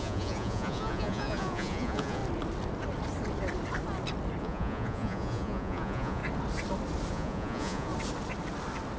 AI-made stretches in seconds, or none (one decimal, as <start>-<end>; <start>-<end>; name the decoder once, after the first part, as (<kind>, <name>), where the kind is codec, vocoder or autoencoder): 0.0-2.2 (vocoder, Vocos); 4.4-6.2; 7.1-7.9